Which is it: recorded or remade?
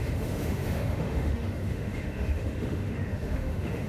remade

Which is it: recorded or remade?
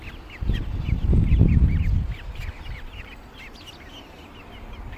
recorded